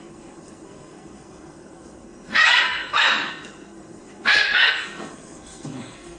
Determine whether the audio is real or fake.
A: fake